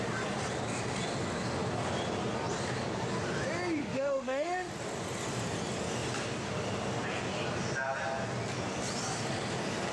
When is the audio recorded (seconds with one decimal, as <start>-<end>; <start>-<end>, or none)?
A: 0.0-3.8; 4.7-9.9